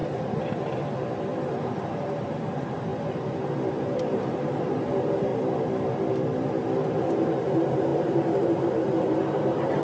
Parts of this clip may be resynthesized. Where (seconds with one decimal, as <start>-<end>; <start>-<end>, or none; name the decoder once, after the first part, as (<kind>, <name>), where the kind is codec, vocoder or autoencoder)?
1.6-2.9 (vocoder, BigVGAN v2); 4.3-5.3; 7.0-9.8